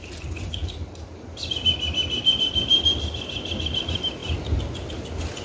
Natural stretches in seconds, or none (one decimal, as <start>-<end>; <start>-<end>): 0.0-5.4